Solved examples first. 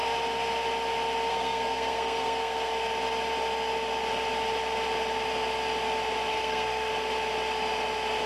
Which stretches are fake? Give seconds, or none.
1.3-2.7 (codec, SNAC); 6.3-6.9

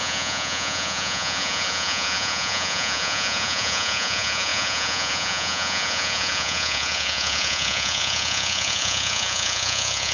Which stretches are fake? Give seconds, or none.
0.0-10.1 (vocoder, Vocos)

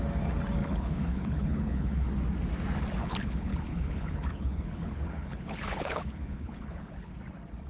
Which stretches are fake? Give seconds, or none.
0.6-2.1 (codec, HILCodec); 3.0-7.1

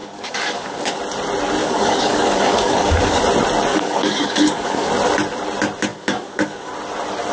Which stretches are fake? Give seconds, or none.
0.0-1.0 (codec, DAC); 1.6-3.2; 3.7-4.9; 5.9-6.7

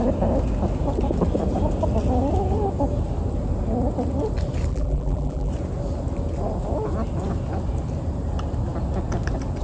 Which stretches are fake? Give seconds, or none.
4.7-5.5 (vocoder, BigVGAN v2)

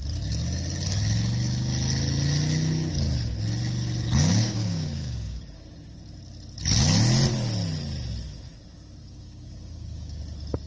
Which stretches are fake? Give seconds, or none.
4.3-5.4 (codec, DAC); 9.0-10.2

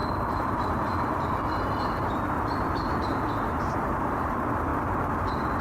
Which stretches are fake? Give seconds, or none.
0.0-4.7 (vocoder, BigVGAN v2)